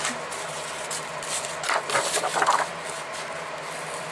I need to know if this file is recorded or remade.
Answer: remade